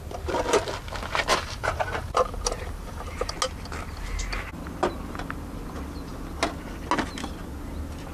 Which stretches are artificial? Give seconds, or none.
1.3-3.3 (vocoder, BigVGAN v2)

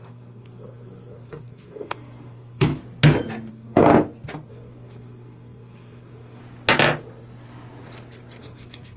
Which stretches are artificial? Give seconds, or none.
0.0-2.7 (codec, SNAC); 3.5-3.9; 4.5-6.4; 8.4-9.0

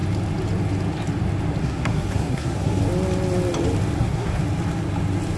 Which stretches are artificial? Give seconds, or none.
1.6-2.8 (codec, SNAC); 4.0-4.4

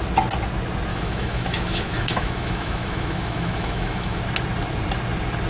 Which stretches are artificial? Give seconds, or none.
0.9-4.2 (autoencoder, DAC-VAE)

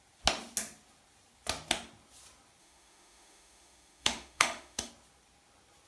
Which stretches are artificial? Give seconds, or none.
2.6-4.9 (autoencoder, DAC-VAE)

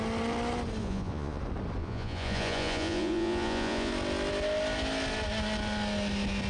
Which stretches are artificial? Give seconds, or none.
0.8-1.4 (vocoder, Vocos); 1.8-3.9